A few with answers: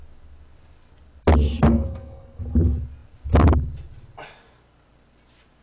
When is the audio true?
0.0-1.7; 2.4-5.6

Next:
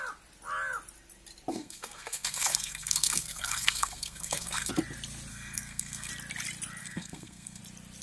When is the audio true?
0.0-1.5; 4.7-5.3; 6.1-6.8; 7.6-8.0

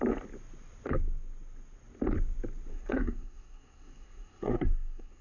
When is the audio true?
0.0-2.7

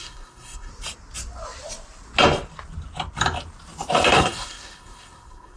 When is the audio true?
0.7-4.1

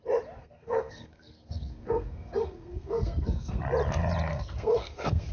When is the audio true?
0.0-0.4; 3.6-4.3

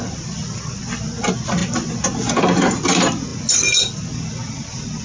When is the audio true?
0.0-5.0

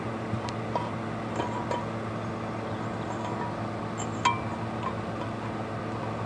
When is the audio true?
0.0-6.3